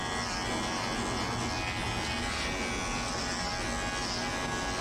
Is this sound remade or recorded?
recorded